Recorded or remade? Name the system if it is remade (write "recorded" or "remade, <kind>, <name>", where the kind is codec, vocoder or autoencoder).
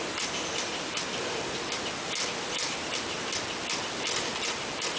recorded